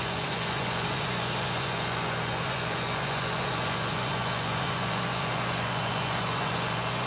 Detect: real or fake fake